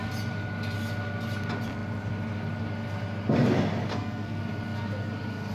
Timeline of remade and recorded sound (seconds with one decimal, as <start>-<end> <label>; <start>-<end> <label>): 0.0-3.9 recorded; 3.9-4.4 remade; 4.4-5.5 recorded